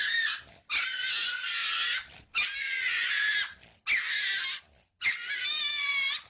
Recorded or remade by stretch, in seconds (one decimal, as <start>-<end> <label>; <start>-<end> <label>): 0.0-6.3 recorded